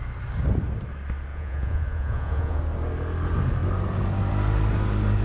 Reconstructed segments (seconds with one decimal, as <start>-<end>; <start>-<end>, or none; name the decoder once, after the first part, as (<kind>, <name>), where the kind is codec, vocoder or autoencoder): 1.3-2.6 (vocoder, Vocos)